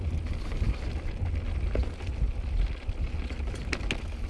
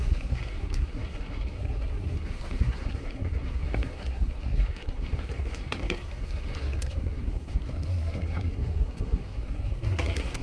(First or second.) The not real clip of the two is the second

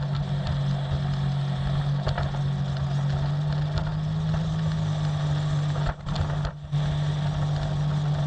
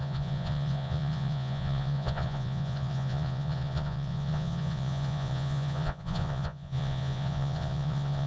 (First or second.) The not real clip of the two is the second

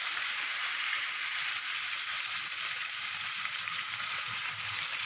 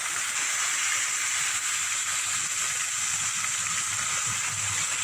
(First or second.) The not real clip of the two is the first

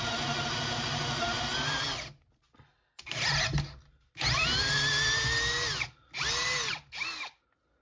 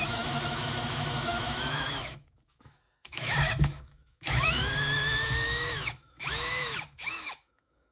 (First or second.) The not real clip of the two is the second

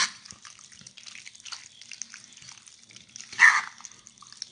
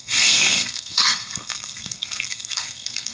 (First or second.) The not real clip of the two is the second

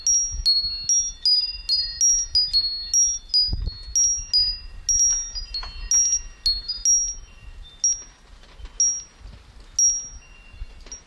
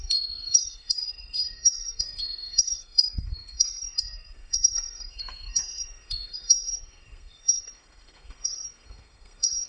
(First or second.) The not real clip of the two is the second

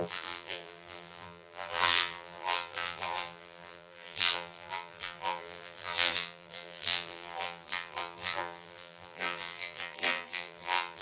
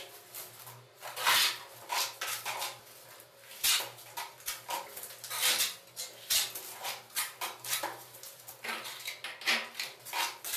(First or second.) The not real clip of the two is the first